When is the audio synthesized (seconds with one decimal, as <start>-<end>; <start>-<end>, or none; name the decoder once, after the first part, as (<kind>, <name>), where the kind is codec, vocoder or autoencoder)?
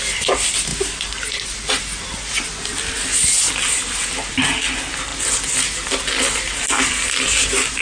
none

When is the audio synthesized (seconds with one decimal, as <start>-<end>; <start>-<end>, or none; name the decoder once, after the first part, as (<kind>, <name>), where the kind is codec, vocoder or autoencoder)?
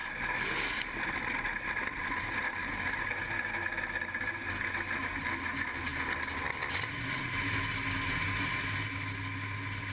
none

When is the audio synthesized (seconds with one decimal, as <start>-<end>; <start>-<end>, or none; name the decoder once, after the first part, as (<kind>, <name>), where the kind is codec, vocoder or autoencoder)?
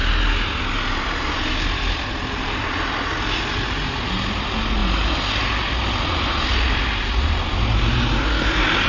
none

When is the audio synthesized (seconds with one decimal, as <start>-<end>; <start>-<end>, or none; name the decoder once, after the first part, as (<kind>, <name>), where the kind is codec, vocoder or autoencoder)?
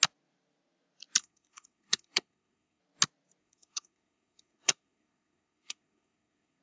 1.2-2.8 (codec, SNAC); 3.4-6.6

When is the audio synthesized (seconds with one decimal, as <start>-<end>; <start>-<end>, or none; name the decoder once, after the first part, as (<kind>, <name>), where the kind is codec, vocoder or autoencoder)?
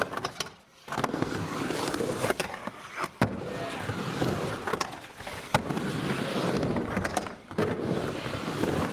0.8-1.4 (codec, SNAC)